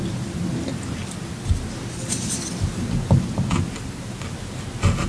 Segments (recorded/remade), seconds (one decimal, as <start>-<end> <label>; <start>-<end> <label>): 0.0-5.1 recorded